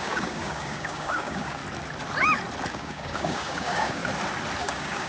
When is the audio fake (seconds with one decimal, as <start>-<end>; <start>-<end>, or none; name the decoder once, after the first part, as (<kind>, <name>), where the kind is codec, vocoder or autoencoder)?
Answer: 0.0-1.6 (codec, DAC); 2.7-4.0; 4.6-5.1